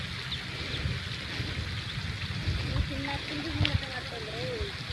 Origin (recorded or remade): recorded